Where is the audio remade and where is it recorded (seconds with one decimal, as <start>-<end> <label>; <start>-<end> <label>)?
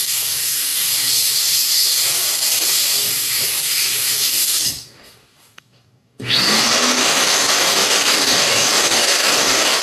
0.0-9.8 remade